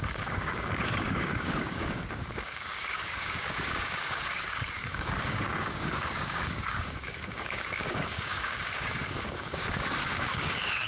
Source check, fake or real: fake